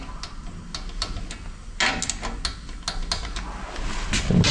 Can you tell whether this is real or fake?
real